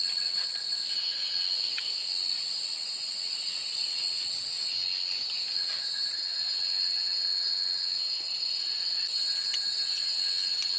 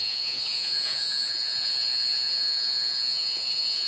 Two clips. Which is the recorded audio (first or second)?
first